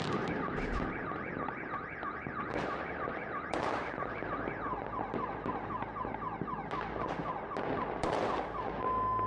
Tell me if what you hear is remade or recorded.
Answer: recorded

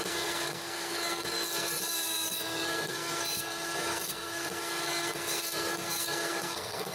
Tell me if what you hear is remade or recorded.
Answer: remade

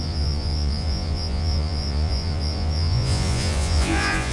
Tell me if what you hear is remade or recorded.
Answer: remade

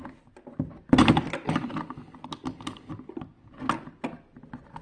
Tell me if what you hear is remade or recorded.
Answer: recorded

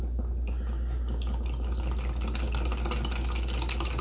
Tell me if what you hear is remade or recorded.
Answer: recorded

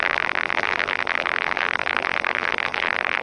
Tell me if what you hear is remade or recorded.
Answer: remade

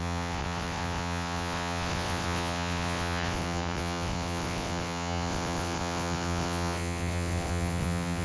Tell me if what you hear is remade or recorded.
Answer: remade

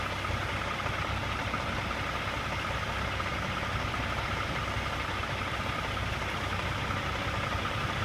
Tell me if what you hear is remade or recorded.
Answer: recorded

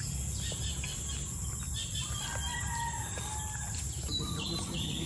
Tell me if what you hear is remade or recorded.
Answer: recorded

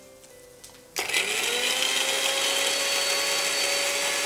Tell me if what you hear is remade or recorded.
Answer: recorded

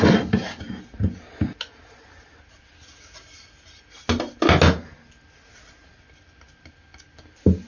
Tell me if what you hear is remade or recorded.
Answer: recorded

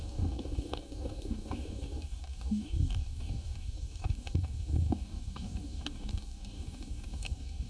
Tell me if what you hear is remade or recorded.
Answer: remade